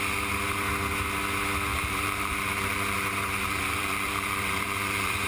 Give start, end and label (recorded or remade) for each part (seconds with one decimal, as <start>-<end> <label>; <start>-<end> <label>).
0.0-1.7 recorded; 1.7-5.3 remade